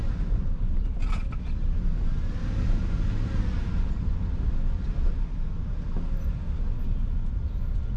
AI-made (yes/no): no